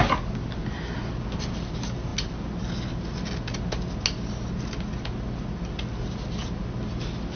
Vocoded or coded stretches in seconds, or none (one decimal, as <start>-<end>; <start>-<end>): none